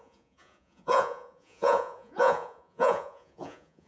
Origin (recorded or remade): remade